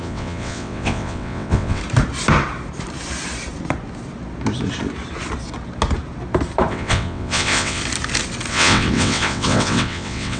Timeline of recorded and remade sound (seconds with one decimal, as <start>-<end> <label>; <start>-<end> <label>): 0.0-1.8 remade; 1.8-6.7 recorded; 6.7-7.8 remade; 7.8-8.5 recorded; 8.5-10.4 remade